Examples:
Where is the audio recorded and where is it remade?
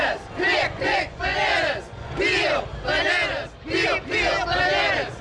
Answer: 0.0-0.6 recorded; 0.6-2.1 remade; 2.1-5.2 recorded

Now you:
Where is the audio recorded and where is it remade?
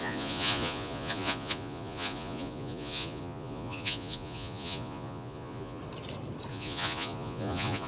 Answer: 0.0-5.8 remade; 5.8-6.5 recorded; 6.5-7.9 remade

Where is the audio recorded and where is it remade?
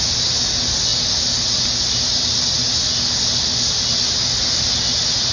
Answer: 0.0-5.3 recorded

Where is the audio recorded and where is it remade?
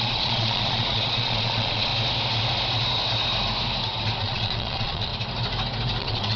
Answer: 0.0-1.9 remade; 1.9-4.2 recorded; 4.2-5.1 remade; 5.1-6.0 recorded; 6.0-6.4 remade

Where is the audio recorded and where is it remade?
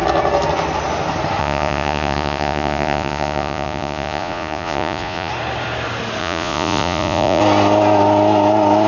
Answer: 0.0-1.4 recorded; 1.4-5.3 remade; 5.3-6.2 recorded; 6.2-7.4 remade; 7.4-8.9 recorded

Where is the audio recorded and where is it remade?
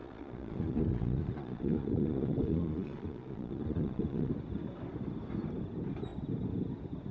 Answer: 0.0-4.3 remade; 4.3-7.1 recorded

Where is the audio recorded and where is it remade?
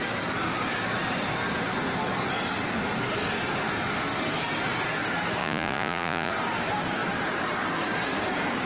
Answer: 0.0-5.4 recorded; 5.4-6.3 remade; 6.3-8.7 recorded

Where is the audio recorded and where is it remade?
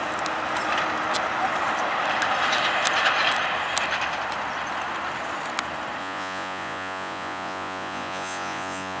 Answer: 0.0-6.0 recorded; 6.0-9.0 remade